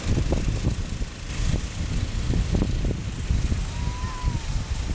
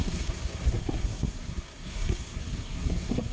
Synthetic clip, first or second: second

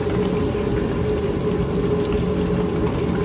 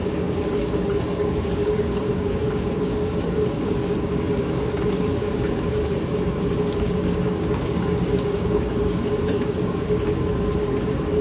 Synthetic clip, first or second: second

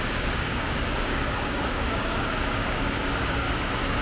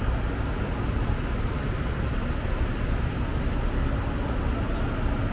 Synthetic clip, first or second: first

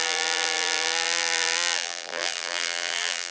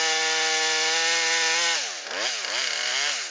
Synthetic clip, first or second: first